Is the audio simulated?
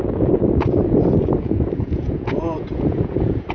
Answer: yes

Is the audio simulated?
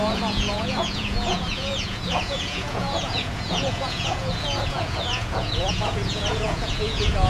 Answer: yes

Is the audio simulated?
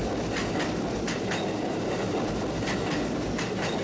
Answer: no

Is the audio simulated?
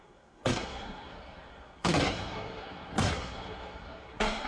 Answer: yes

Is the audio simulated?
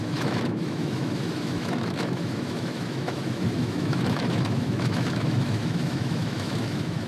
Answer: yes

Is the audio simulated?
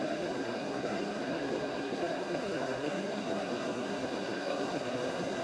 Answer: yes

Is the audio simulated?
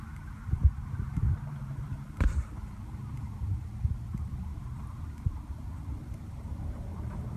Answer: yes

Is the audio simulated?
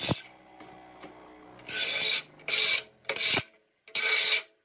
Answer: no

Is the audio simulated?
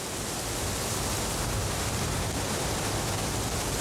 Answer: no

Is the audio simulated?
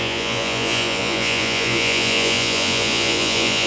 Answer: yes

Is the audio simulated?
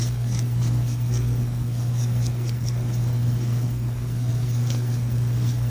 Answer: yes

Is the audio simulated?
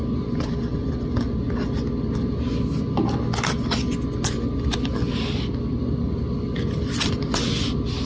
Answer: no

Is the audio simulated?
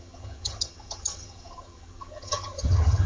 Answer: yes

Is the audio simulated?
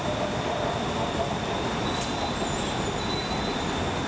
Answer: no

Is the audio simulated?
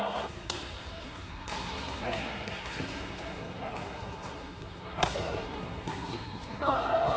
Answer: yes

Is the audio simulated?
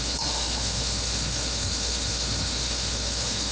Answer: yes